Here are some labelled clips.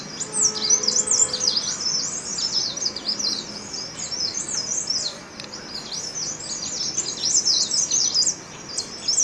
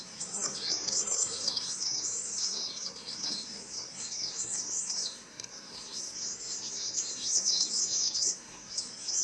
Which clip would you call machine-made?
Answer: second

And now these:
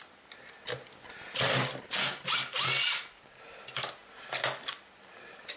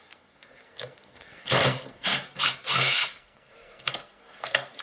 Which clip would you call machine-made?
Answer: second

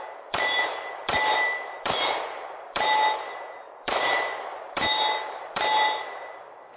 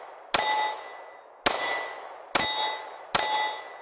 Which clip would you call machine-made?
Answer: first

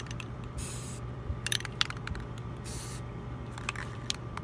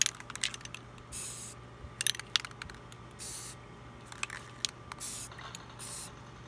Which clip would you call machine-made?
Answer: first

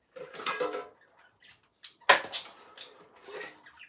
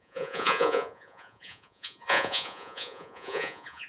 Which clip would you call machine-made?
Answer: second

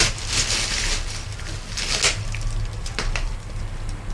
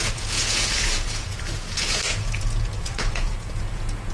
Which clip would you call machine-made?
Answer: second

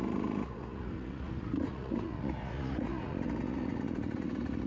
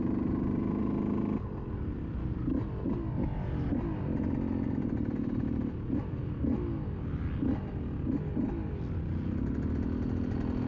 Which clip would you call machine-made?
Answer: first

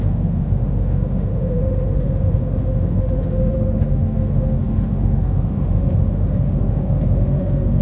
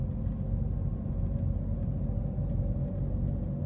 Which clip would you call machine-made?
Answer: first